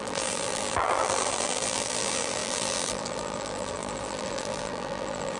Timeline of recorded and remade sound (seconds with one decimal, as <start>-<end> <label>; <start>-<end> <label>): 0.0-5.4 remade